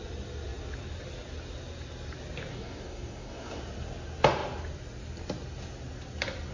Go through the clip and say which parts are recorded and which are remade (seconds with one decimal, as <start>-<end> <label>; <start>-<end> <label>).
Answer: 0.0-2.5 recorded; 2.5-3.6 remade; 3.6-6.5 recorded